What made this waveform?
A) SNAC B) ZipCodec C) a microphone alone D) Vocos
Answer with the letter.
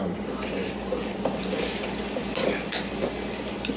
C